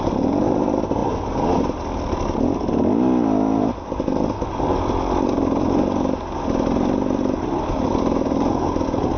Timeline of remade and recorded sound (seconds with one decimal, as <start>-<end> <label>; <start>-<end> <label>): 0.0-9.2 recorded